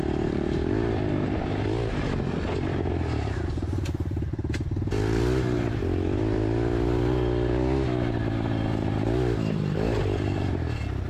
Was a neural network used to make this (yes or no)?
no